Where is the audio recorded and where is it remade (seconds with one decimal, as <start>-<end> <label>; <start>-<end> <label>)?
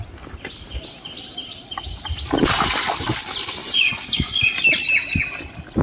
0.0-3.6 recorded; 3.6-4.5 remade; 4.5-5.8 recorded